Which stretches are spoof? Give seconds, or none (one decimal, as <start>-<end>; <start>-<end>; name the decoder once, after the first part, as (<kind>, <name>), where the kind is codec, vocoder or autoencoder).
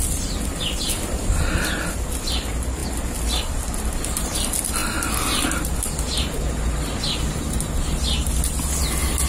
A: none